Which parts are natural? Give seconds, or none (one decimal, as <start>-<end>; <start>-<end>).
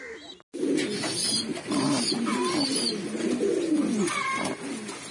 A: 0.0-5.1